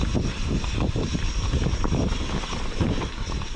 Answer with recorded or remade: remade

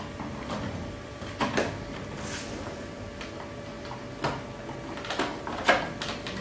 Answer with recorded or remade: recorded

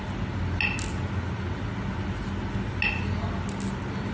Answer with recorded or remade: recorded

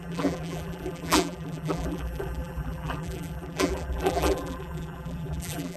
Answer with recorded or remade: remade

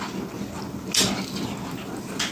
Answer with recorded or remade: recorded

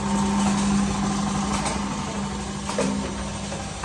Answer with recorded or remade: recorded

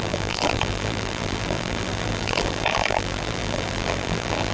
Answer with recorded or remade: remade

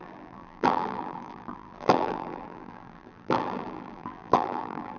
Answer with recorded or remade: remade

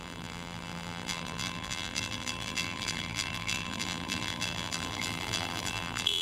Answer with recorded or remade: remade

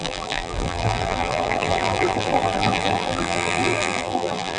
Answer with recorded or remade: remade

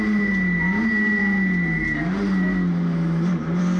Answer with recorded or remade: recorded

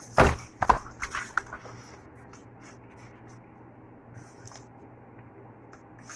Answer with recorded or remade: recorded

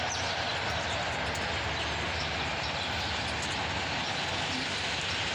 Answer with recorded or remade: recorded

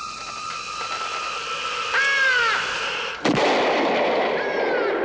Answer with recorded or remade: remade